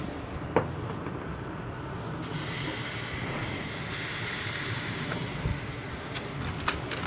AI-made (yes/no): no